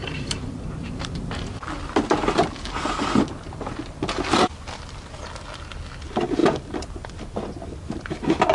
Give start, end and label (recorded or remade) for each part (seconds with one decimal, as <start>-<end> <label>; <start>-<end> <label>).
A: 0.0-8.5 recorded